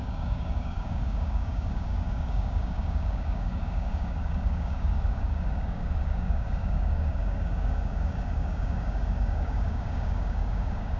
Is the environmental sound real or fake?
fake